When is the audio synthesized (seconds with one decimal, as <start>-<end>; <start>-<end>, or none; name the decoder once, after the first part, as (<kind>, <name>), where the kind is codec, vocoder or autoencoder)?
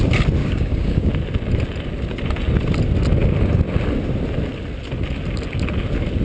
0.4-1.1 (codec, DAC)